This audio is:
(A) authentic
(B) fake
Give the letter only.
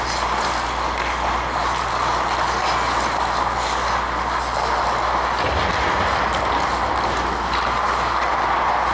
A